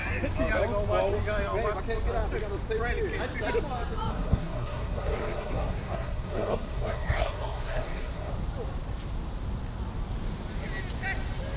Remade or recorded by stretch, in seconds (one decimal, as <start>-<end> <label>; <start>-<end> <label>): 0.0-4.1 recorded; 4.1-8.3 remade; 8.3-11.6 recorded